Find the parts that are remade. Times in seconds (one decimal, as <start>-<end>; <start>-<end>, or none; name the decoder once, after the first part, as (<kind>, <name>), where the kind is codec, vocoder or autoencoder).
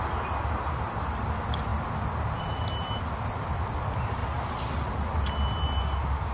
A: none